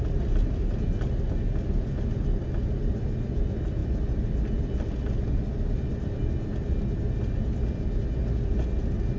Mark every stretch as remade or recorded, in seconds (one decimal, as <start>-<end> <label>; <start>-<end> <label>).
0.0-9.2 recorded